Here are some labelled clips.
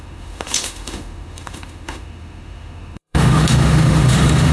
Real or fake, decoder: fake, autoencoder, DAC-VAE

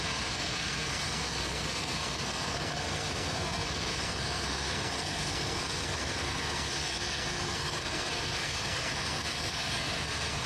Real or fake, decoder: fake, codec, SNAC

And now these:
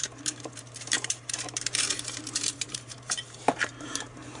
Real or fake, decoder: fake, vocoder, BigVGAN v2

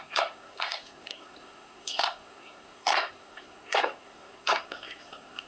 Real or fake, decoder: fake, codec, SNAC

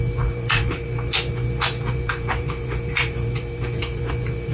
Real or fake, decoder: fake, vocoder, BigVGAN v2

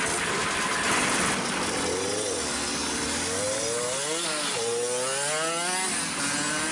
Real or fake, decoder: real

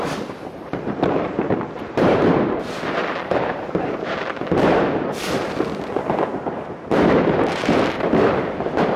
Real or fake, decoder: fake, vocoder, BigVGAN v2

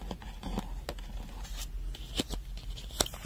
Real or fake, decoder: real